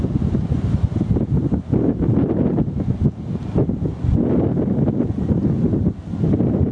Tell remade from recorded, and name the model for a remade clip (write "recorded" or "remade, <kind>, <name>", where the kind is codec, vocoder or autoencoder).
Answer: recorded